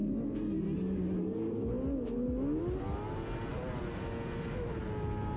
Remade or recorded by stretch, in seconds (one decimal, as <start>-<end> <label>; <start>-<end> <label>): 0.0-5.4 recorded